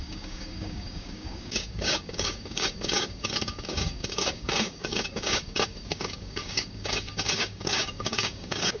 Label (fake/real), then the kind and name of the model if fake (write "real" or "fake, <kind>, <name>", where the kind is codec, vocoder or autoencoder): fake, codec, DAC